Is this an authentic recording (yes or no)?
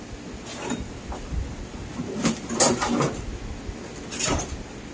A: yes